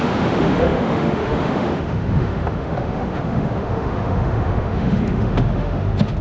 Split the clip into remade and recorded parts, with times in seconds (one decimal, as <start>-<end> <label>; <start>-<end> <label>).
0.0-6.2 remade